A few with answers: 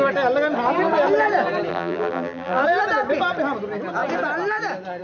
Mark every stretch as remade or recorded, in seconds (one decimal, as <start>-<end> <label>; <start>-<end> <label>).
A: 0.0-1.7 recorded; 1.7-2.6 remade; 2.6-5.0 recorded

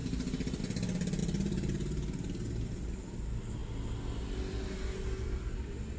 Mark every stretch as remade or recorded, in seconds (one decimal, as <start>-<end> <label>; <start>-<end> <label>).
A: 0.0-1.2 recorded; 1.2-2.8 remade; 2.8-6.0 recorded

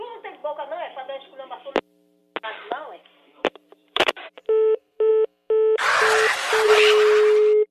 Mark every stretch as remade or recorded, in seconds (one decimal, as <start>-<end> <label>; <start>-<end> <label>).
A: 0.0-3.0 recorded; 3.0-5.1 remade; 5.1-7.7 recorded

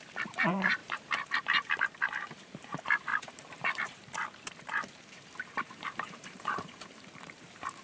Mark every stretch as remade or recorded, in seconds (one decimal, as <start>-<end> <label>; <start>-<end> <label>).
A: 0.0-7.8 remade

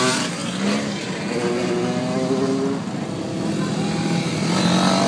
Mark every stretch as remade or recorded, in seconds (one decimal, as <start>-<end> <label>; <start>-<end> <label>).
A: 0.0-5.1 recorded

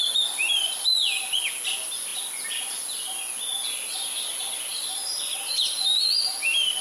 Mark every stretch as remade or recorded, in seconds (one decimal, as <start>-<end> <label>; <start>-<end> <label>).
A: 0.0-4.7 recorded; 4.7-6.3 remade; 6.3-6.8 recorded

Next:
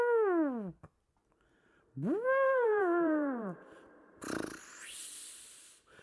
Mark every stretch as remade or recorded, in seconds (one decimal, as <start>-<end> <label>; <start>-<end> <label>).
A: 0.0-1.2 recorded; 1.2-4.6 remade; 4.6-6.0 recorded

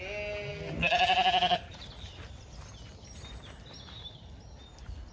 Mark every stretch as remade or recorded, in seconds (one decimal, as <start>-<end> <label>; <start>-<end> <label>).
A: 0.0-0.5 recorded; 0.5-2.7 remade; 2.7-5.1 recorded